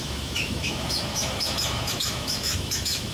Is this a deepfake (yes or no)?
yes